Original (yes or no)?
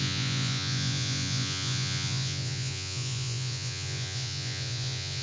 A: no